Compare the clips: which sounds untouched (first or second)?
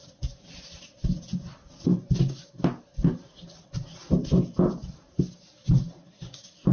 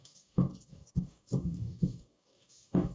first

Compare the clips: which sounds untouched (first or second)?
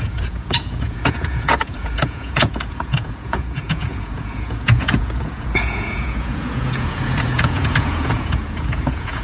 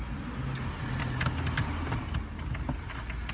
second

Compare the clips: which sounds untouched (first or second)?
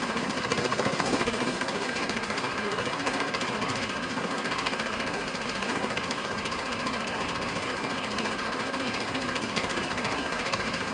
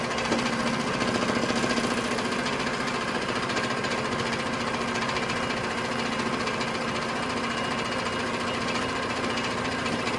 second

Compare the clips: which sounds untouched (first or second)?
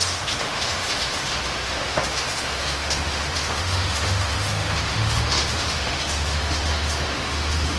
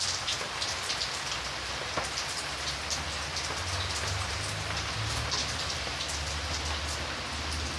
second